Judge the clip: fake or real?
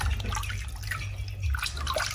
real